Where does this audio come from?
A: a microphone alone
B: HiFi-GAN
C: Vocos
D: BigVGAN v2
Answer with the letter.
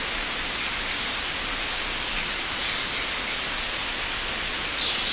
A